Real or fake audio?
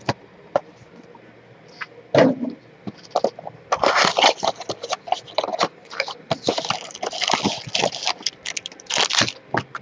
real